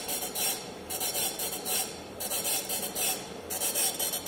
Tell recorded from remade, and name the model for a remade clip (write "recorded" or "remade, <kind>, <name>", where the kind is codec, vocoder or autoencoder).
remade, vocoder, BigVGAN v2